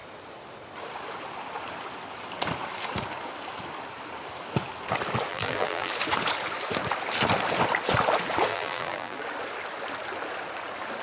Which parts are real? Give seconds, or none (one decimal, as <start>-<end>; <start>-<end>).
0.0-5.3; 5.9-8.5; 9.2-11.0